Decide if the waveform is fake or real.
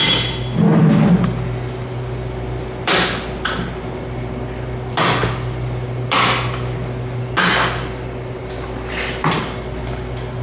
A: real